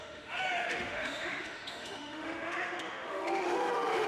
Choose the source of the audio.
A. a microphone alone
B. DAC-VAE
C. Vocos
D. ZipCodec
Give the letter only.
B